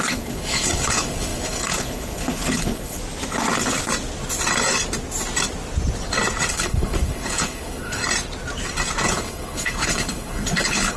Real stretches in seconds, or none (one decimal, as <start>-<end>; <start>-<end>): 3.0-6.5; 8.0-9.1